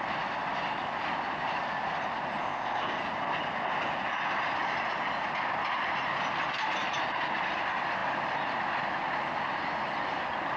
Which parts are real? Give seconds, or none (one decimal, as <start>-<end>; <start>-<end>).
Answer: 0.0-2.4; 3.0-10.6